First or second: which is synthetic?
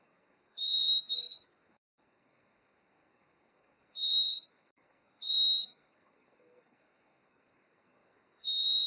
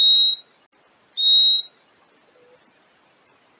first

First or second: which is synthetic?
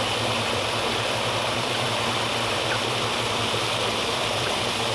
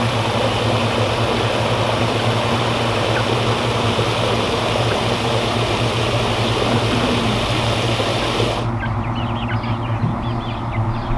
first